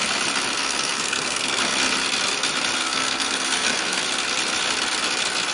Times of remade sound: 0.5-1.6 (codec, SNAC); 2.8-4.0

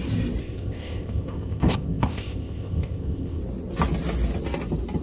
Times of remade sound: 0.4-3.4 (codec, ZipCodec)

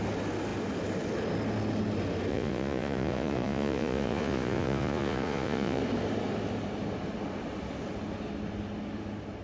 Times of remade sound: 2.3-5.8 (vocoder, Vocos)

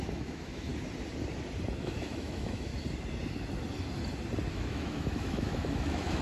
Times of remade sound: 0.0-0.7 (autoencoder, DAC-VAE); 1.8-2.7; 4.5-6.2